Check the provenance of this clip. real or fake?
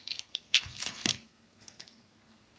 fake